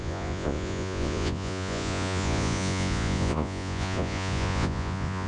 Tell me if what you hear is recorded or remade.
remade